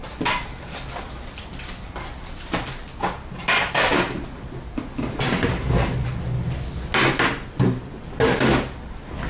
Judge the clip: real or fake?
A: real